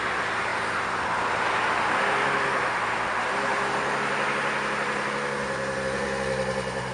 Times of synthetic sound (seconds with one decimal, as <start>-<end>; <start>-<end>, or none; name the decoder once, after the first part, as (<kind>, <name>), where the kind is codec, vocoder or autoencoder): none